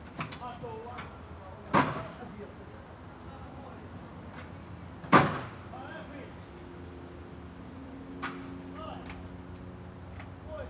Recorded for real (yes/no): yes